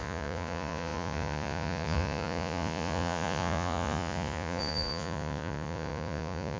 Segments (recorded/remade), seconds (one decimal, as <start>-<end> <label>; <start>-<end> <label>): 0.0-6.6 remade